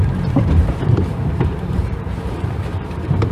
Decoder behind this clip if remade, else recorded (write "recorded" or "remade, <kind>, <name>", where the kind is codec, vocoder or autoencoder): remade, vocoder, BigVGAN v2